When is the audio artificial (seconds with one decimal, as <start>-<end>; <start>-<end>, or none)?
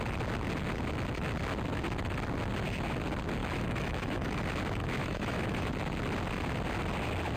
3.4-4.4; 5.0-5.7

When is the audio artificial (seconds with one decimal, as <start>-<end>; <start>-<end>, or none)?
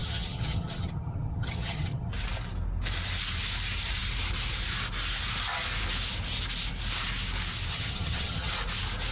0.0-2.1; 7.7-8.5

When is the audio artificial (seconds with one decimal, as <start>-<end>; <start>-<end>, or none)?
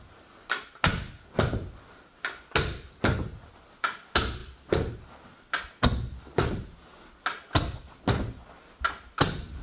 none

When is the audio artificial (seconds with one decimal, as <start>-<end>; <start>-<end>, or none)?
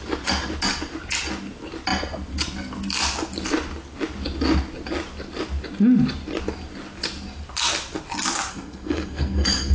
8.5-9.7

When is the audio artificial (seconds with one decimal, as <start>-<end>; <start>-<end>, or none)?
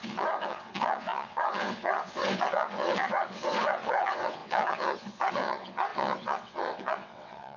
0.0-7.6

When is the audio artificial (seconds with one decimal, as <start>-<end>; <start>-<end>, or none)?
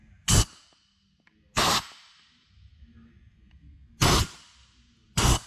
none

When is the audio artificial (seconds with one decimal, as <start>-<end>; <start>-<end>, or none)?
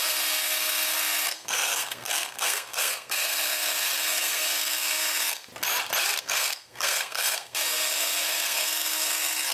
0.0-5.5; 6.2-9.5